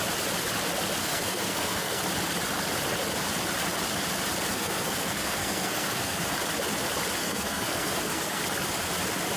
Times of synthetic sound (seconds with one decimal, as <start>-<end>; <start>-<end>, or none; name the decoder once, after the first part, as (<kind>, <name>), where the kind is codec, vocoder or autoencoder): 1.0-2.0 (codec, SNAC); 4.5-6.2; 7.2-8.4